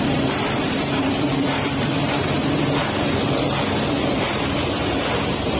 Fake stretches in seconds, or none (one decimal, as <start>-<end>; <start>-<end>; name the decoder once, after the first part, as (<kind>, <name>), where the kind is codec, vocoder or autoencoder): 0.0-2.4 (vocoder, BigVGAN v2); 4.0-5.6